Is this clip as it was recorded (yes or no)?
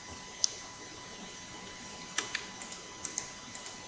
yes